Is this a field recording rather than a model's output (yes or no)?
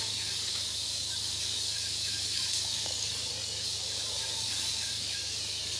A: no